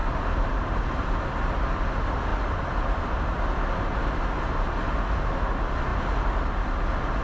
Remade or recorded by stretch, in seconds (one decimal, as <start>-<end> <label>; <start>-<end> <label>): 0.0-1.2 remade; 1.2-7.2 recorded